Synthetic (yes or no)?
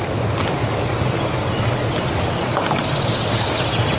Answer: no